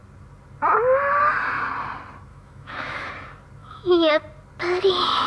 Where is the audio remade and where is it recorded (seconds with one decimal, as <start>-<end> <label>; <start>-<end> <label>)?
0.0-2.3 recorded; 2.3-3.1 remade; 3.1-3.6 recorded; 3.6-4.1 remade; 4.1-5.3 recorded